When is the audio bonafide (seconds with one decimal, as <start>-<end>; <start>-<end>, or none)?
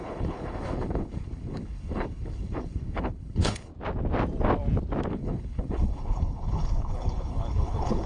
3.7-5.1